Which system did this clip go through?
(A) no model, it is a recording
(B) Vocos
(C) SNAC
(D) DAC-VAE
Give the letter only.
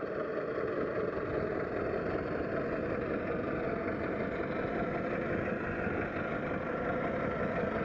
A